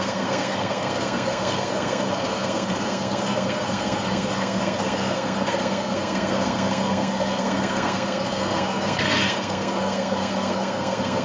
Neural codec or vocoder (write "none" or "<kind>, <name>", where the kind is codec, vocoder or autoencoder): codec, SNAC